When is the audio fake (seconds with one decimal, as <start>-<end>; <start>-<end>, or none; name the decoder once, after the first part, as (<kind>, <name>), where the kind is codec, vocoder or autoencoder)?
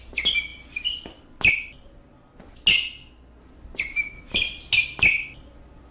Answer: none